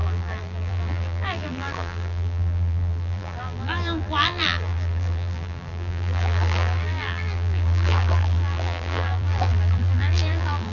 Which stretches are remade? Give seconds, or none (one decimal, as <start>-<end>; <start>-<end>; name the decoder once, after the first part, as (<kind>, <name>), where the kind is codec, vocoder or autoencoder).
0.0-10.7 (vocoder, BigVGAN v2)